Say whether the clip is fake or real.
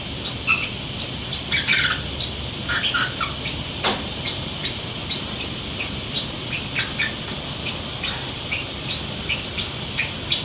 real